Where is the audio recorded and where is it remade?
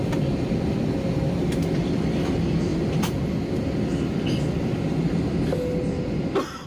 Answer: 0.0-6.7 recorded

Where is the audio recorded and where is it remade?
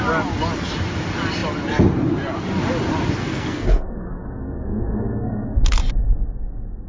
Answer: 0.0-3.2 recorded; 3.2-5.6 remade; 5.6-6.9 recorded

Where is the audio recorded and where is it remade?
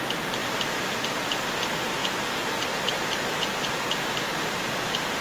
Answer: 0.0-5.2 recorded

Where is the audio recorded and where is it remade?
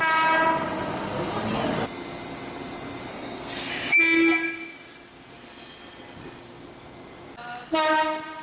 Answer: 0.0-3.1 recorded; 3.1-3.7 remade; 3.7-8.4 recorded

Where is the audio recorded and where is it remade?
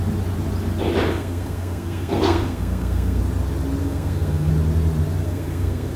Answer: 0.0-1.1 recorded; 1.1-3.2 remade; 3.2-3.8 recorded; 3.8-4.5 remade; 4.5-5.2 recorded; 5.2-6.0 remade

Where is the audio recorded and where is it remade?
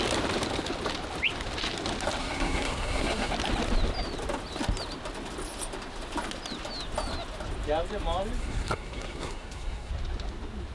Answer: 0.0-2.2 recorded; 2.2-3.3 remade; 3.3-8.4 recorded; 8.4-9.9 remade; 9.9-10.7 recorded